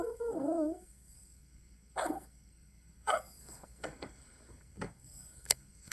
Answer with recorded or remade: remade